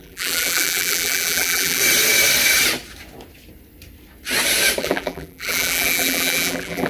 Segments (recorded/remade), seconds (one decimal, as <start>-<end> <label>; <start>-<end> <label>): 0.0-1.8 remade; 1.8-4.8 recorded; 4.8-6.9 remade